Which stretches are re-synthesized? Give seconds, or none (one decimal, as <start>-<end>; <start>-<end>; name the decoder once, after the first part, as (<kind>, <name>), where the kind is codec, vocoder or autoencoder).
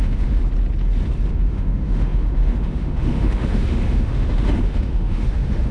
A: 0.0-0.4 (autoencoder, DAC-VAE); 1.3-5.7